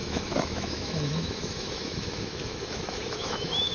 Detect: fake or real fake